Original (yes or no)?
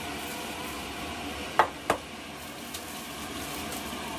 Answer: yes